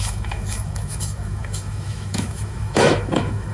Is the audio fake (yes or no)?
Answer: yes